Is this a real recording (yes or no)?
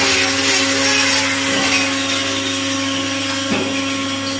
yes